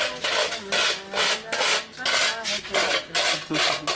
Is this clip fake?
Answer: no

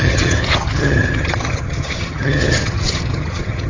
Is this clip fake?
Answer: yes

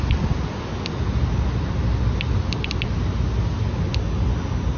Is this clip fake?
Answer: no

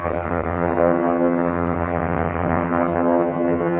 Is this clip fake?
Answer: yes